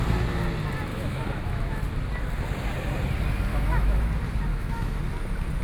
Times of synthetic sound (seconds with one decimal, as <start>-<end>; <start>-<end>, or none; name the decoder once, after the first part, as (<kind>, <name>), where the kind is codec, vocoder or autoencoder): 0.9-1.8 (autoencoder, DAC-VAE); 3.5-4.0; 4.5-5.0